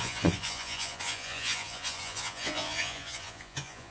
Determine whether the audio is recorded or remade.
remade